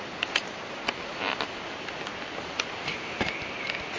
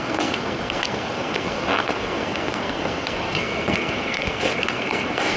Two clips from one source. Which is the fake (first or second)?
second